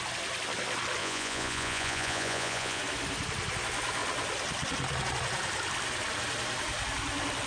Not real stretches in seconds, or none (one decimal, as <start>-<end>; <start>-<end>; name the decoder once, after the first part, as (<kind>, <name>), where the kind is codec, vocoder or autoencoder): 1.0-2.8 (vocoder, Vocos)